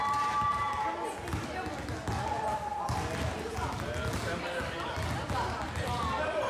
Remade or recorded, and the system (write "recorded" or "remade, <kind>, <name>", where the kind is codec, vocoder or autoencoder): recorded